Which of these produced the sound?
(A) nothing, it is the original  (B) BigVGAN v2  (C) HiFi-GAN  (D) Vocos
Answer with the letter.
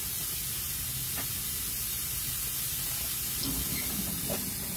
A